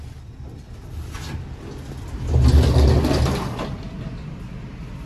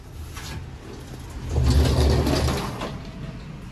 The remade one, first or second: first